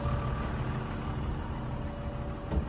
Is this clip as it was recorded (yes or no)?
yes